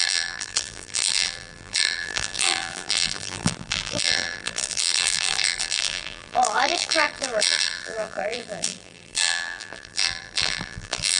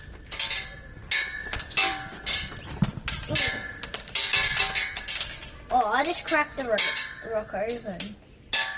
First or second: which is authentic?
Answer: second